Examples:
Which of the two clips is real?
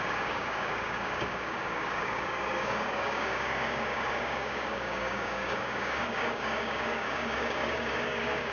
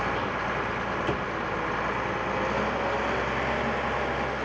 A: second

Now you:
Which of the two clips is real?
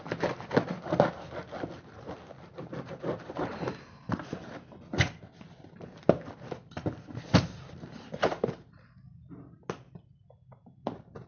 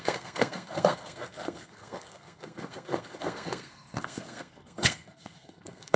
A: first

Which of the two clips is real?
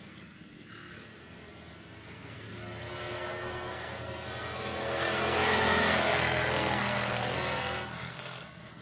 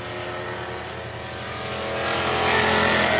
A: second